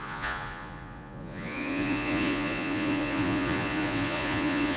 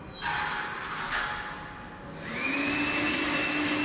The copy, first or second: first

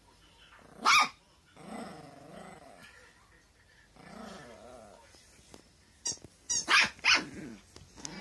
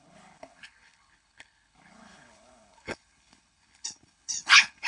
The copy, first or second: second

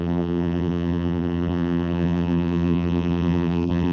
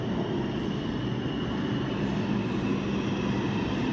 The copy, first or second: first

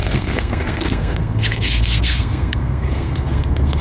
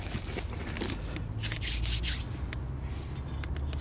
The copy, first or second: first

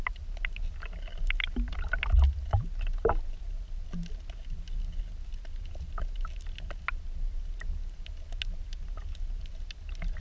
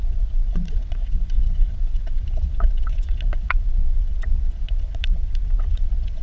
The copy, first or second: second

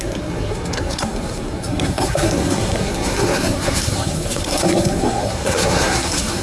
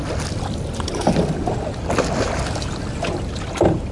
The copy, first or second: first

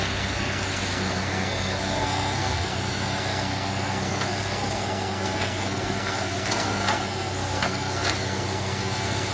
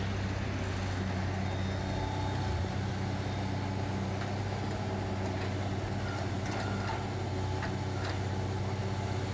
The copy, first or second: first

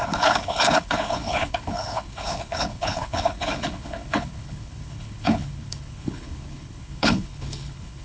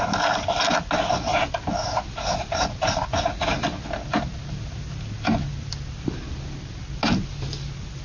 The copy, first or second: first